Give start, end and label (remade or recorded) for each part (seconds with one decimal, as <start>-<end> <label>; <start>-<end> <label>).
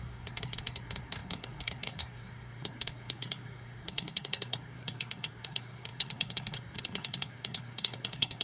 0.0-8.4 remade